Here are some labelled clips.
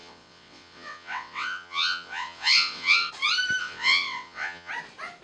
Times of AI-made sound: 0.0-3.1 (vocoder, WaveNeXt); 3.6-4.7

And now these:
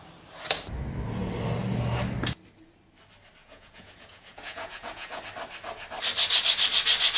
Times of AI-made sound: 3.4-5.2 (vocoder, Vocos)

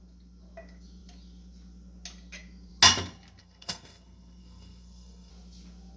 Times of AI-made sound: 3.4-5.3 (codec, SNAC)

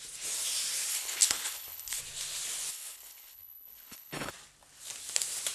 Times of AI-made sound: 0.9-2.0 (codec, HILCodec); 2.7-4.3

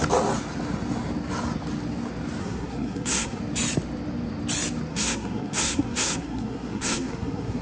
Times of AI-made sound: 2.4-3.4 (codec, SNAC); 4.9-7.6